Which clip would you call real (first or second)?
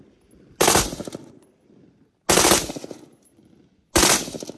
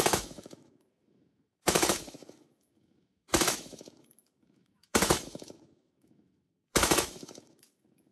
first